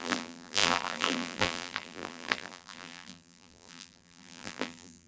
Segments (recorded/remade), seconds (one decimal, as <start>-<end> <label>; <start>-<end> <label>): 0.0-5.1 remade